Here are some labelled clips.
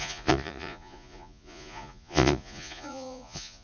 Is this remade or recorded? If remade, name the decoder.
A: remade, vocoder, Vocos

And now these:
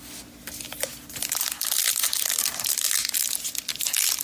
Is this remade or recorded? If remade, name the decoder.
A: recorded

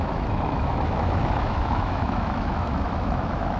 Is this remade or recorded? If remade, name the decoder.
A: remade, autoencoder, DAC-VAE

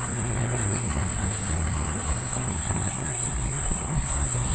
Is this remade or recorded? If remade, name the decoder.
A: remade, codec, SNAC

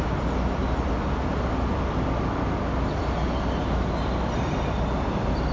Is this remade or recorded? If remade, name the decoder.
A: recorded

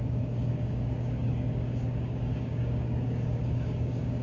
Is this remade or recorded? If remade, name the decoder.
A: remade, codec, DAC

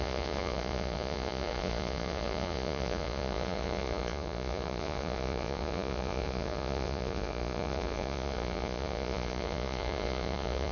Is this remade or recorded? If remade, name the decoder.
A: remade, vocoder, Vocos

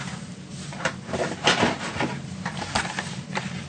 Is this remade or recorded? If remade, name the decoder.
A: remade, vocoder, BigVGAN v2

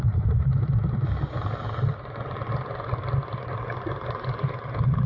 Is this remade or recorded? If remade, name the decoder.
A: recorded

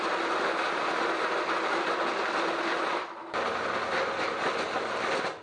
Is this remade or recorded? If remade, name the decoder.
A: recorded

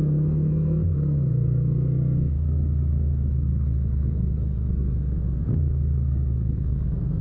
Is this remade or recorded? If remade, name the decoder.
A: remade, codec, SNAC